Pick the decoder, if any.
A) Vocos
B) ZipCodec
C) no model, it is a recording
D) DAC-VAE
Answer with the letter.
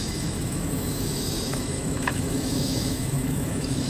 D